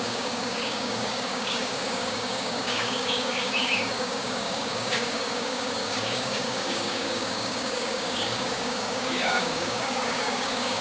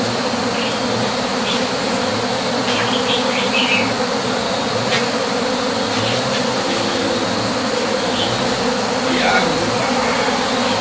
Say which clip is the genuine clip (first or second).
second